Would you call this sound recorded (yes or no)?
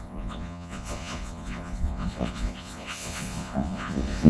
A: no